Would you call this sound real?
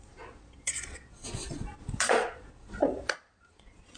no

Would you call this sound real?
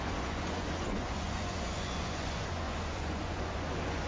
no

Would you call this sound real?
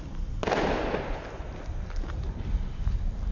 yes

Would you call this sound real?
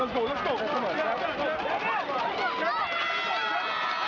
yes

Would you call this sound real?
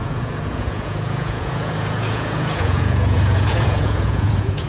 no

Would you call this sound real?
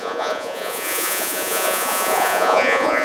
no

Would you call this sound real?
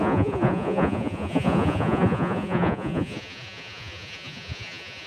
no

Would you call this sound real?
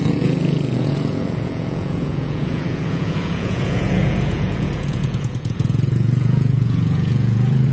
no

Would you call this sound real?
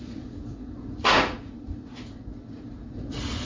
no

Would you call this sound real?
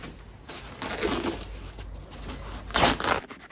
yes